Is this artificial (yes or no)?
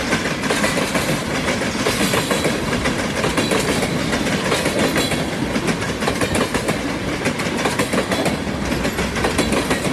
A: no